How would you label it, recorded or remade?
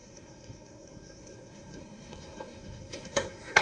remade